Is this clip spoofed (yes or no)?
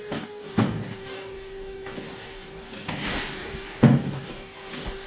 yes